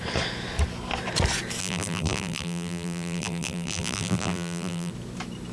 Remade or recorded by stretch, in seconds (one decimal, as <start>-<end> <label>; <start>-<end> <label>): 0.0-1.6 recorded; 1.6-4.9 remade; 4.9-5.5 recorded